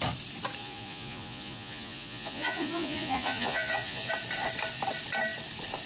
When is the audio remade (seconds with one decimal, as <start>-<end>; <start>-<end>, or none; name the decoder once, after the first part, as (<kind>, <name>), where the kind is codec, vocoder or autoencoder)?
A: 0.6-4.1 (vocoder, Vocos)